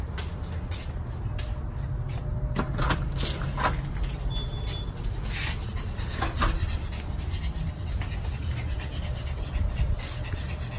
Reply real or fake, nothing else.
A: real